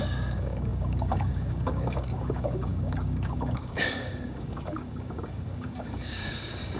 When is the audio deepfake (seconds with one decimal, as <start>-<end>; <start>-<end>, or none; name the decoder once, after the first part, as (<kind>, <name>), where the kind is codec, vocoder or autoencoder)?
0.0-6.8 (codec, DAC)